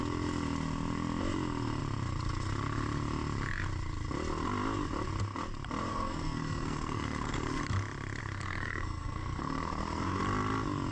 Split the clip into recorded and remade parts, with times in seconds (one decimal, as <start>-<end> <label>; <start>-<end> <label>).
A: 0.0-5.9 recorded; 5.9-7.6 remade; 7.6-8.2 recorded; 8.2-10.2 remade; 10.2-10.9 recorded